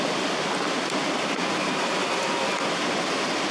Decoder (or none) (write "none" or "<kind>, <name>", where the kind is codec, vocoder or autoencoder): none